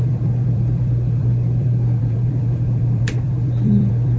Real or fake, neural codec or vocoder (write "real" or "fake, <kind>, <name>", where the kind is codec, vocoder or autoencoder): fake, vocoder, BigVGAN v2